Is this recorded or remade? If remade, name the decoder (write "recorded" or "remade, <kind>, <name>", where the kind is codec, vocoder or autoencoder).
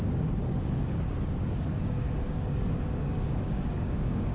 remade, codec, DAC